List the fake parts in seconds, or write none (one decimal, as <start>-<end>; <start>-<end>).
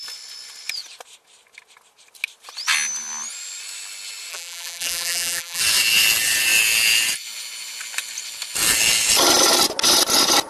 4.3-5.6